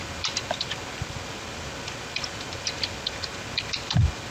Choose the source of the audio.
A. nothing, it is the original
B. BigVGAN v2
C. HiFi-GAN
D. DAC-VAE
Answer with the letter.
A